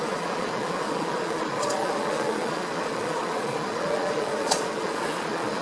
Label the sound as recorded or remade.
remade